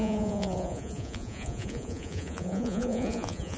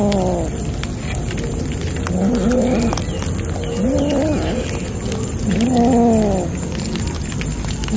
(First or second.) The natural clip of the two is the second